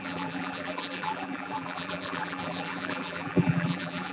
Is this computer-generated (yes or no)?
yes